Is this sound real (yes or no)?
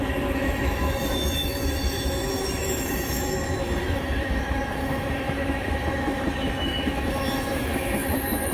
no